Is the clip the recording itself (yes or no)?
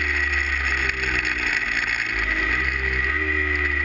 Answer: yes